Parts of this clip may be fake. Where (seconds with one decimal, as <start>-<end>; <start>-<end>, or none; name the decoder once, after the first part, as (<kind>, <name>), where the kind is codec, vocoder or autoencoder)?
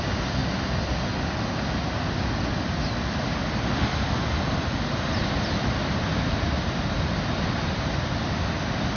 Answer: none